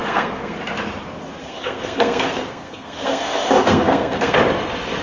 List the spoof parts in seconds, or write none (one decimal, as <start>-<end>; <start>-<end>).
0.0-0.6; 1.4-4.4